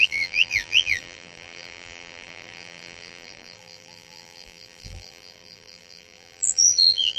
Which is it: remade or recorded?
remade